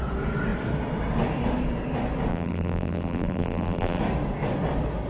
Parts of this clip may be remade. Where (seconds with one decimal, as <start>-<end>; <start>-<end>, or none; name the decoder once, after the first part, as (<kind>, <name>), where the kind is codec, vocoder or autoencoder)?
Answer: 2.3-4.0 (vocoder, BigVGAN v2)